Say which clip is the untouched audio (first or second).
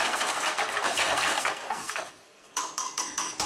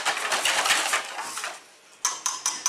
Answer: second